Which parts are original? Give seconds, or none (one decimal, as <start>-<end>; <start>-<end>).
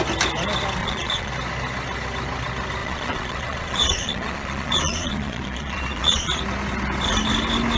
0.0-0.8; 1.3-2.8; 6.4-7.8